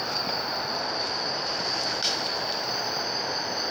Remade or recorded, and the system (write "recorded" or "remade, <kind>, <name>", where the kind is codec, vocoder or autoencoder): recorded